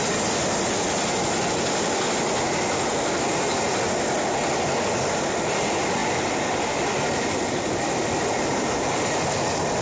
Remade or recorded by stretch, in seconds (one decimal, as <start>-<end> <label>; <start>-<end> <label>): 0.0-2.9 recorded; 2.9-3.7 remade; 3.7-6.0 recorded; 6.0-8.6 remade; 8.6-9.8 recorded